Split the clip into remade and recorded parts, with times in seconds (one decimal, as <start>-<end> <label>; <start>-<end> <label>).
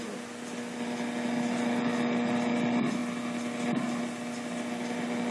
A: 0.0-5.3 recorded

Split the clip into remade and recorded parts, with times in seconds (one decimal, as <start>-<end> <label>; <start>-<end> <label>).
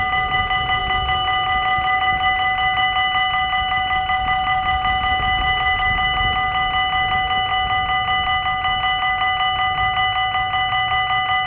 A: 0.0-11.5 recorded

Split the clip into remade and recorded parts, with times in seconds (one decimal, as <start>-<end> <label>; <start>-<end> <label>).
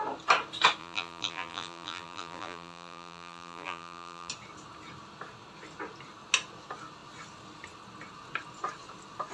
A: 0.0-0.8 recorded; 0.8-4.3 remade; 4.3-9.3 recorded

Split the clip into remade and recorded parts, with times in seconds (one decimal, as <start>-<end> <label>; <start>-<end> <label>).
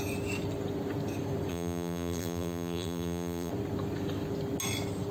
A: 0.0-1.5 recorded; 1.5-3.5 remade; 3.5-5.1 recorded